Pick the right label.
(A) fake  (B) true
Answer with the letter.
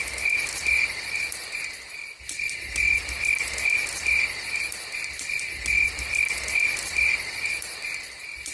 B